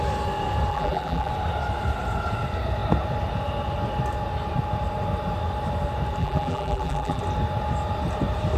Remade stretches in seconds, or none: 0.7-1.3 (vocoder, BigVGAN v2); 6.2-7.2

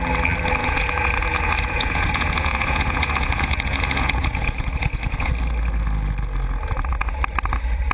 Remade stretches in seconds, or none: 0.6-5.3 (vocoder, Vocos)

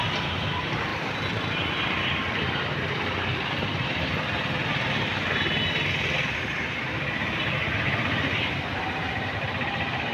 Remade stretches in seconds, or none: 0.9-4.0 (vocoder, BigVGAN v2)